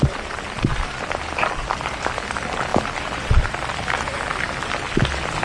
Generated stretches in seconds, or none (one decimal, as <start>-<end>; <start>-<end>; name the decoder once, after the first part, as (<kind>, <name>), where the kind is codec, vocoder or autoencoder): none